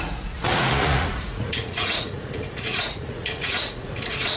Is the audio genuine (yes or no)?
no